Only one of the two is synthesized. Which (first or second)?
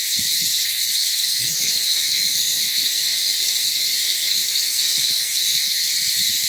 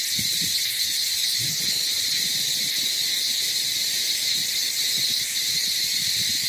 first